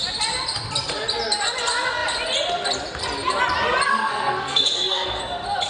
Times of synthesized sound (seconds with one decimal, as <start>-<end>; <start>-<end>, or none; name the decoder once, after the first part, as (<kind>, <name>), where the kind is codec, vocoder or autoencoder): 3.9-5.2 (codec, SNAC)